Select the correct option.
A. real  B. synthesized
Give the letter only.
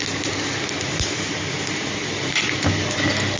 A